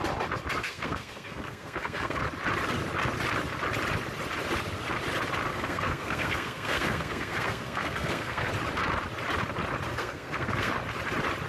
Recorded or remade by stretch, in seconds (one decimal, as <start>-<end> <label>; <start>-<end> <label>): 0.0-0.6 recorded; 0.6-2.2 remade; 2.2-5.5 recorded; 5.5-8.5 remade; 8.5-9.9 recorded; 9.9-10.7 remade; 10.7-11.5 recorded